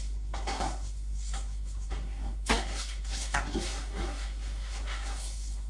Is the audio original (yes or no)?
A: no